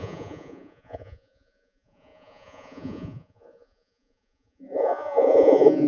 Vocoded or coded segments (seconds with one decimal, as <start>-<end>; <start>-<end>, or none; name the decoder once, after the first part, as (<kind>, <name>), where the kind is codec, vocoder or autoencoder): 0.0-5.9 (vocoder, Vocos)